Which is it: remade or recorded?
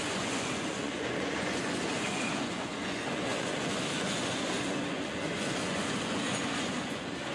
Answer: remade